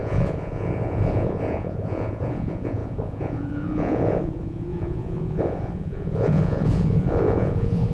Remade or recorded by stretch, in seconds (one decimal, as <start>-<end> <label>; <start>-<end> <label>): 0.0-7.9 remade